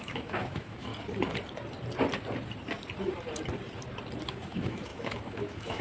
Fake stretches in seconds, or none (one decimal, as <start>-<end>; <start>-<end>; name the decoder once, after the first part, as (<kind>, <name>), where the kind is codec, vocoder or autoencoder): 0.0-0.9 (autoencoder, DAC-VAE); 4.3-5.8